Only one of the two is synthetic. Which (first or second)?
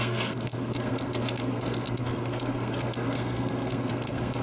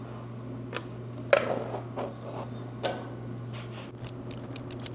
first